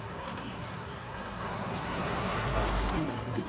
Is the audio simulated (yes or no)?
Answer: yes